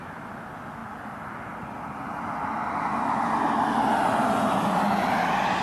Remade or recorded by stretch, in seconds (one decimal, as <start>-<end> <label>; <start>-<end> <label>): 0.0-5.6 recorded